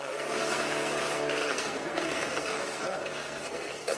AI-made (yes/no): yes